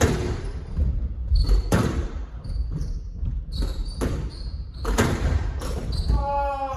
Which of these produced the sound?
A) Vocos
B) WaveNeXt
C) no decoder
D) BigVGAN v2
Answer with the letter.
D